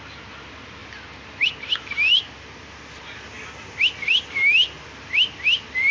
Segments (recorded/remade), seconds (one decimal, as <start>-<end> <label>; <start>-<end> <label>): 0.0-5.9 recorded